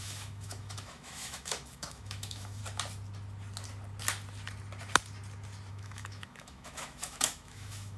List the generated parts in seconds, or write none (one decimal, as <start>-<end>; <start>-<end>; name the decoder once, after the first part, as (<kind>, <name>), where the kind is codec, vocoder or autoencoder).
0.0-2.6 (autoencoder, DAC-VAE); 5.7-8.0